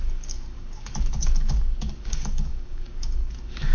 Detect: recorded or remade remade